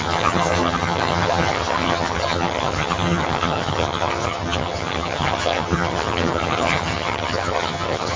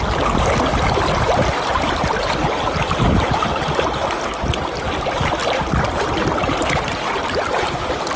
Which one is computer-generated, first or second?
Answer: first